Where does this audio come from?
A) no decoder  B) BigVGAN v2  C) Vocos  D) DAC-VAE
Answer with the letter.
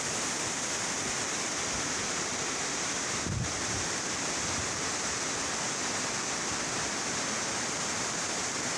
B